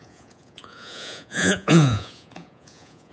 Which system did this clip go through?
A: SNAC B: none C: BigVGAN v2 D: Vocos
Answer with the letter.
D